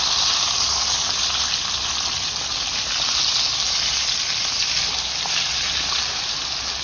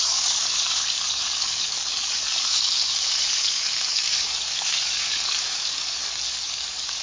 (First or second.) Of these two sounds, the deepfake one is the second